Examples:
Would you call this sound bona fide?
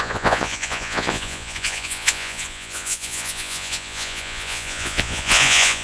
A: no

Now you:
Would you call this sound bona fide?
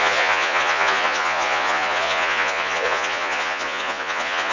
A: no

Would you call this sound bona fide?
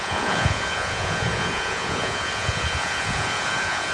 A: no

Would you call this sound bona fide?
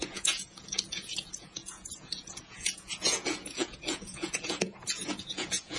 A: no